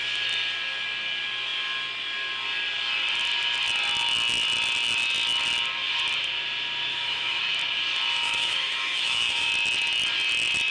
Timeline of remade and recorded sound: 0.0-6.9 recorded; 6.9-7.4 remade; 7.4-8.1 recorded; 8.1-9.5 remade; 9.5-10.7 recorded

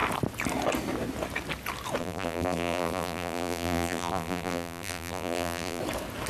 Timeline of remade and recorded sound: 0.0-2.0 recorded; 2.0-5.8 remade; 5.8-6.3 recorded

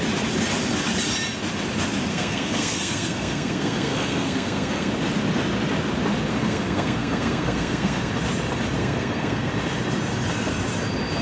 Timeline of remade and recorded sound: 0.0-2.1 recorded; 2.1-4.9 remade; 4.9-6.3 recorded; 6.3-8.1 remade; 8.1-8.8 recorded; 8.8-9.5 remade; 9.5-11.2 recorded

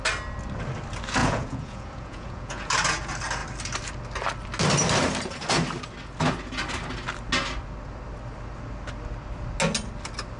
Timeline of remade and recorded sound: 0.0-1.2 recorded; 1.2-2.7 remade; 2.7-10.4 recorded

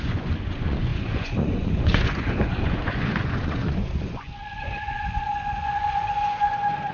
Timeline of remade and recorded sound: 0.0-6.9 remade

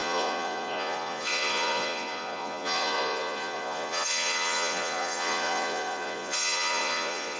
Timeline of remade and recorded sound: 0.0-7.4 remade